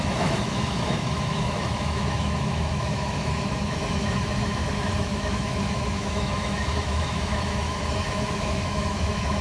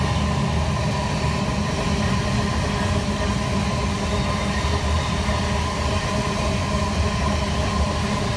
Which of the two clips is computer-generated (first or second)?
first